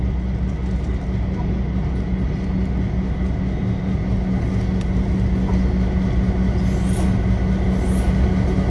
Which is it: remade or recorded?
recorded